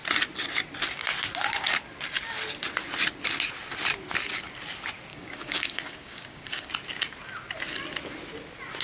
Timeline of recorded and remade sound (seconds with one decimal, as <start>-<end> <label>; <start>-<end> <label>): 0.0-5.1 recorded; 5.1-6.7 remade; 6.7-8.8 recorded